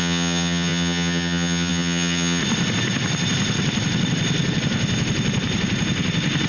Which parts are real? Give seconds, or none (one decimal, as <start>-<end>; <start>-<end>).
2.4-6.5